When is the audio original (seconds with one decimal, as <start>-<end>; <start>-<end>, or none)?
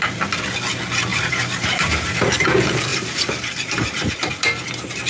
0.0-1.1; 2.1-2.9; 4.3-5.1